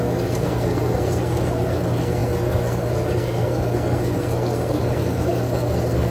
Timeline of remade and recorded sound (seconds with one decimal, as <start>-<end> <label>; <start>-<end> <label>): 0.0-6.1 remade